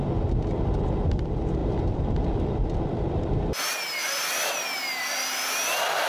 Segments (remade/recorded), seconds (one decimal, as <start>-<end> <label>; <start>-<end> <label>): 0.0-1.6 recorded; 1.6-3.5 remade; 3.5-4.0 recorded; 4.0-4.5 remade; 4.5-6.1 recorded